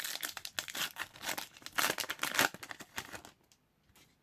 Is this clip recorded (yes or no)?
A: yes